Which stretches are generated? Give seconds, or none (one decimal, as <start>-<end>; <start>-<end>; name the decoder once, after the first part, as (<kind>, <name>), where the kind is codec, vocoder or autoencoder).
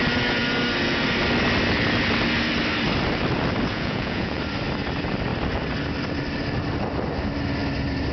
3.7-4.4 (vocoder, Vocos)